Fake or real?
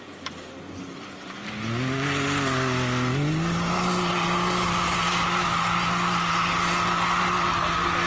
real